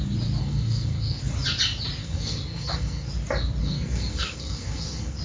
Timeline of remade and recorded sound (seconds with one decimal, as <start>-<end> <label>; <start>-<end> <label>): 0.0-0.4 recorded; 0.4-1.2 remade; 1.2-2.0 recorded; 2.0-3.1 remade; 3.1-3.6 recorded; 3.6-5.2 remade